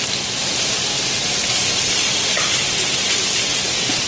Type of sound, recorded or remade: recorded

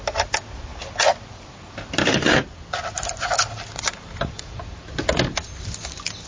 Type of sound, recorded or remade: recorded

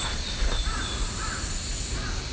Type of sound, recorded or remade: recorded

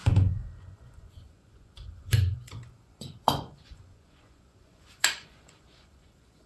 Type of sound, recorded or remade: remade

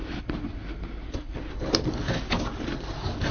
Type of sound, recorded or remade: recorded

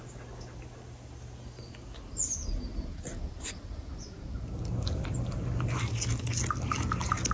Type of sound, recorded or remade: recorded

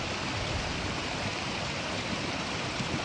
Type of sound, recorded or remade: recorded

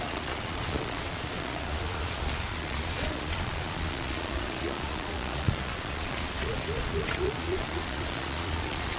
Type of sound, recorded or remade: remade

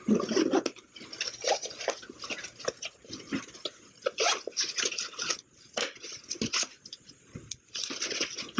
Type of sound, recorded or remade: recorded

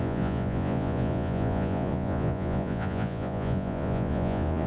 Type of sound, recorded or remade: remade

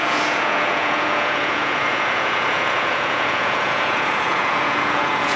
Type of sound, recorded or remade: remade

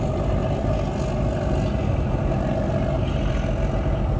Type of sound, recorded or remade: recorded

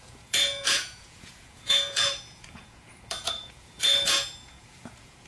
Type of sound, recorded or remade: remade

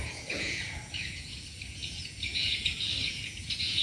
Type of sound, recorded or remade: remade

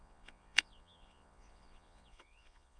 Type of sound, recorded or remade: remade